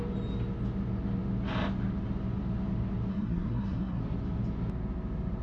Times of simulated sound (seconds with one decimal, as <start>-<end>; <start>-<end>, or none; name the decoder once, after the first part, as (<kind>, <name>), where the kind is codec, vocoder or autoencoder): 3.1-4.0 (codec, SNAC)